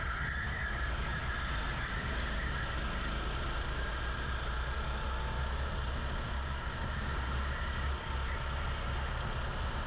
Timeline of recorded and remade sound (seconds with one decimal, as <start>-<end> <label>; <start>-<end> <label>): 0.0-9.9 recorded